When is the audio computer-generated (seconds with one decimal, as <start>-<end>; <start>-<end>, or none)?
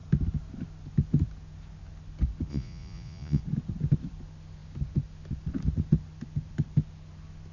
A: 2.5-3.4